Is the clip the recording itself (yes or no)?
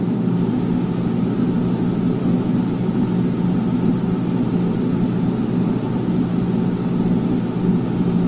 yes